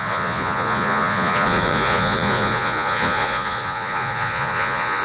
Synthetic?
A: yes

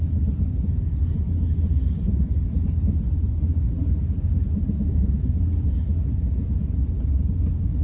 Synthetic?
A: no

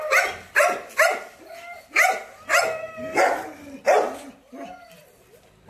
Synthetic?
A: no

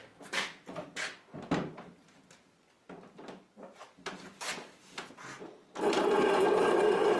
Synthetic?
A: no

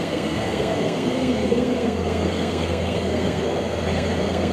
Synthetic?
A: yes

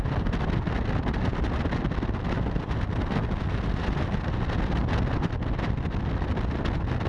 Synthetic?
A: no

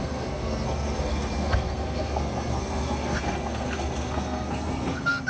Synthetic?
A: yes